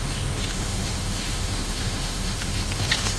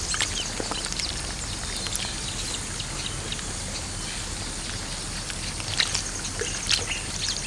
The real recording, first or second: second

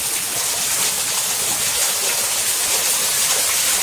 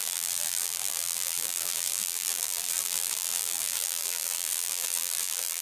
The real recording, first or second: first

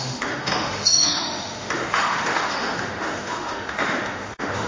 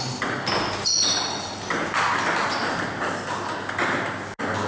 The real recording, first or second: second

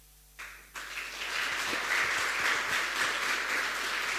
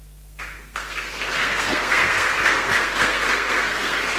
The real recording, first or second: first